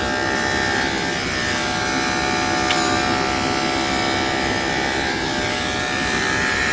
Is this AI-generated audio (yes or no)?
no